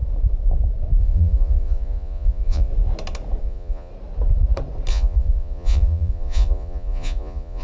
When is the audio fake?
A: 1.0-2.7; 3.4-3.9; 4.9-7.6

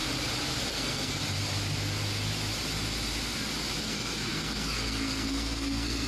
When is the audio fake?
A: 0.7-1.2; 3.8-6.1

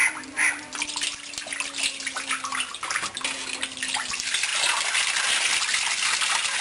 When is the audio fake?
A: none

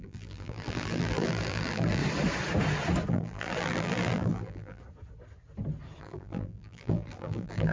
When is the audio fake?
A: 0.0-2.0; 3.1-4.8; 6.0-7.7

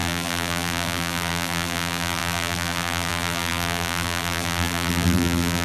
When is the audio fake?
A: 0.0-5.6